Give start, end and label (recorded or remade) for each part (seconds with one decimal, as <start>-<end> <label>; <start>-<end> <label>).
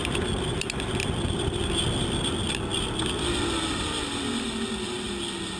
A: 0.0-5.6 recorded